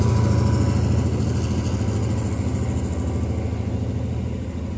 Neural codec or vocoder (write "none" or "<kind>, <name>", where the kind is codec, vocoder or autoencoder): none